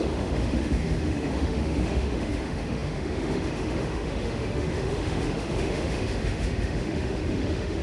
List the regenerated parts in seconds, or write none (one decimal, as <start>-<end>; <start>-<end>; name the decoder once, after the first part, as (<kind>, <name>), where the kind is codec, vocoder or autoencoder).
0.0-7.8 (autoencoder, DAC-VAE)